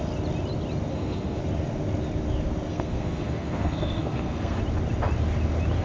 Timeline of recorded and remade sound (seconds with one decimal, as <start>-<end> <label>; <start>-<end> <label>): 0.0-0.9 recorded; 0.9-1.4 remade; 1.4-2.7 recorded; 2.7-4.6 remade; 4.6-5.8 recorded